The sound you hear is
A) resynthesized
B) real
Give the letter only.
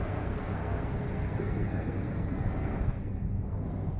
A